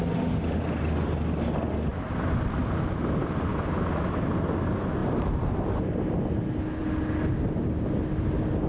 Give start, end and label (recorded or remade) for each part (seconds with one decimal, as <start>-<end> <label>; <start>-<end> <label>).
0.0-8.7 recorded